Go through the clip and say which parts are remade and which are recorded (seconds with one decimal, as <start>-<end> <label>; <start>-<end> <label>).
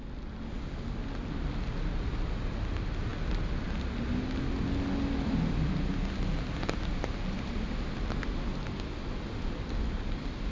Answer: 0.0-1.0 recorded; 1.0-1.7 remade; 1.7-10.5 recorded